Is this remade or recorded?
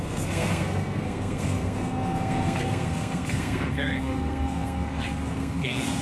remade